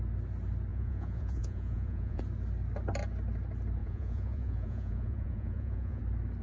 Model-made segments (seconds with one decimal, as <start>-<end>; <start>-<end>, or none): 0.7-2.2; 3.8-6.0